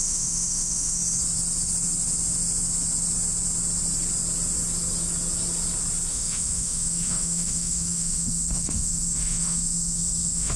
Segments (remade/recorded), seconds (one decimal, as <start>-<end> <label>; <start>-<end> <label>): 0.0-1.0 remade; 1.0-6.1 recorded; 6.1-10.6 remade